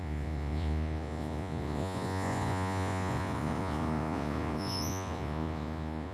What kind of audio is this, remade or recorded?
remade